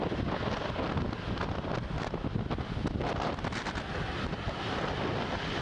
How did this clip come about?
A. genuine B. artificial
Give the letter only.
A